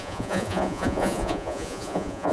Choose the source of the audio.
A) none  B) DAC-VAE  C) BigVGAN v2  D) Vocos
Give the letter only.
D